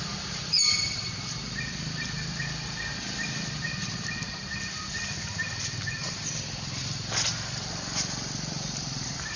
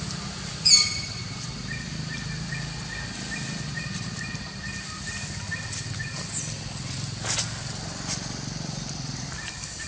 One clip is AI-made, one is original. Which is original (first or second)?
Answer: second